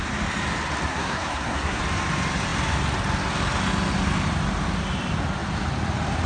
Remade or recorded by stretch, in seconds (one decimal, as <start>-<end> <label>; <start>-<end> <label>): 0.0-0.9 recorded; 0.9-1.8 remade; 1.8-6.3 recorded